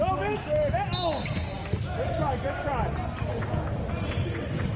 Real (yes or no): yes